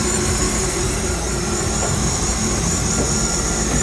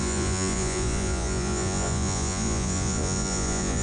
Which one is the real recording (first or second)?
first